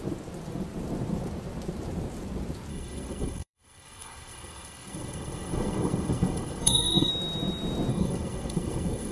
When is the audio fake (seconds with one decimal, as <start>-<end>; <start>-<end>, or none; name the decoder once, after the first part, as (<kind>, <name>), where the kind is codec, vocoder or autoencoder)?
2.7-7.1 (codec, SNAC); 7.9-9.1